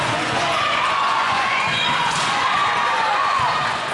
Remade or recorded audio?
remade